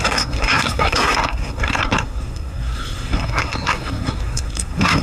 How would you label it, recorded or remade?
remade